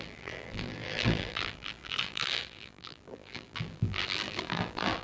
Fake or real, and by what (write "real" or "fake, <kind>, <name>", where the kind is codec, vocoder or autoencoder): fake, vocoder, BigVGAN v2